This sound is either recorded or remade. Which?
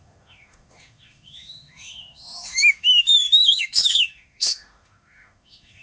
remade